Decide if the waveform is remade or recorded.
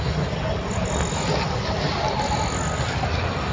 recorded